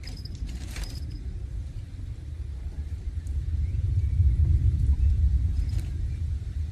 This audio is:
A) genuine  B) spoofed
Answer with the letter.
B